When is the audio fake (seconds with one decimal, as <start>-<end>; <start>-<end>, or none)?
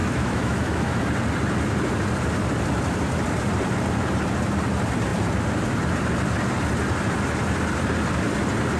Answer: 0.0-1.0